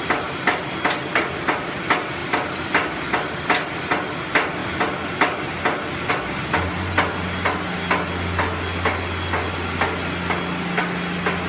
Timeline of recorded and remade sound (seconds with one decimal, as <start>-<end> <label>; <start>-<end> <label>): 0.0-11.5 recorded